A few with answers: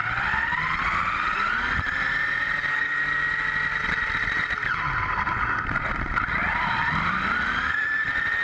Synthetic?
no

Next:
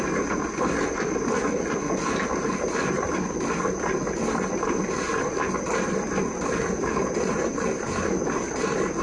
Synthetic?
no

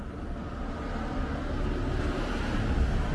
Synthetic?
no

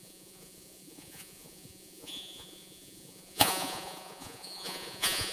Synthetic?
yes